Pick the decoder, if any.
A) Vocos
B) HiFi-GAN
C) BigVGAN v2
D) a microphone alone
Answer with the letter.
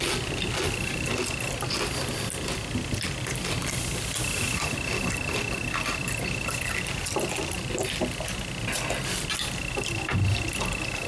D